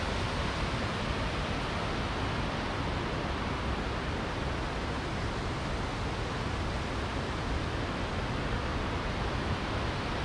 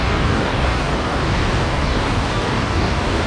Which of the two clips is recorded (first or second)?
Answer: first